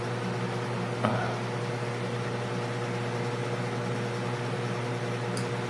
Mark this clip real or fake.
real